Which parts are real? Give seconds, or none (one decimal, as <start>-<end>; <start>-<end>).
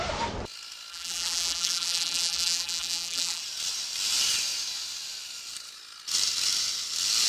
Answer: 0.0-0.9; 3.4-7.3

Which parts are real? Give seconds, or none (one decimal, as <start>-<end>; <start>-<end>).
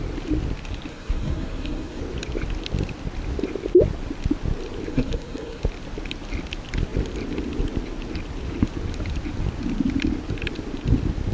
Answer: 0.0-0.9; 2.0-4.9; 5.6-11.3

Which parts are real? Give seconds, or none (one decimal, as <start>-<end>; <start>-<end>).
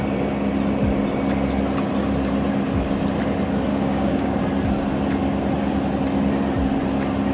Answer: 0.0-3.7; 4.4-7.3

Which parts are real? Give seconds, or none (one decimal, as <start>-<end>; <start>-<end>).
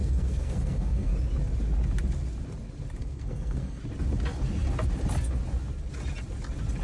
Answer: 1.1-3.0; 3.8-6.8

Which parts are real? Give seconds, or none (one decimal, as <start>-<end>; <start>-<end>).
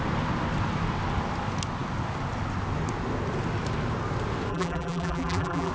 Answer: 0.0-4.5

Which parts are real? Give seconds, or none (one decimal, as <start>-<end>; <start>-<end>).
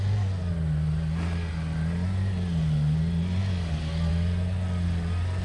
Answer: 0.0-5.4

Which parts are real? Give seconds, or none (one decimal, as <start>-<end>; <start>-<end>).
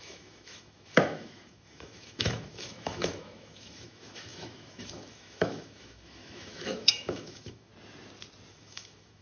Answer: 7.7-8.5